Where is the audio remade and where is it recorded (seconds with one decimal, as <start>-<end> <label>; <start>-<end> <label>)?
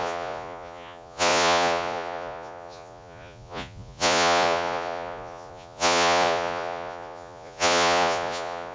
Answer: 0.0-8.7 remade